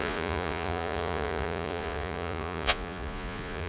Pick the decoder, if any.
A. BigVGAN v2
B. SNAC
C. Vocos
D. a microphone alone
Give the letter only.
C